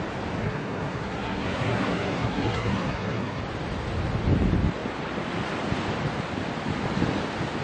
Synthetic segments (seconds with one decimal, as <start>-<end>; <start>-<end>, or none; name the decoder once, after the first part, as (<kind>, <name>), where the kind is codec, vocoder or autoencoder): 0.4-3.4 (codec, SNAC)